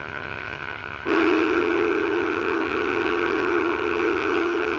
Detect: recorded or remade remade